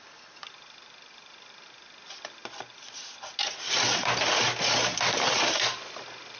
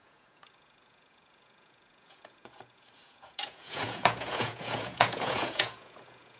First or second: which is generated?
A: second